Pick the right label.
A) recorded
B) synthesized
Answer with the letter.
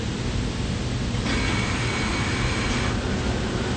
A